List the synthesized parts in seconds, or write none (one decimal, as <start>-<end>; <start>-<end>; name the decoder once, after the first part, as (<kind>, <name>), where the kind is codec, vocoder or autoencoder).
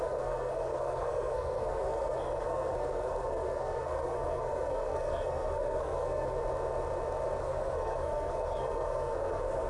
0.0-6.4 (codec, SNAC); 7.4-9.7